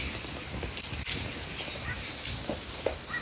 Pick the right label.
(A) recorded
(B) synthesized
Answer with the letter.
A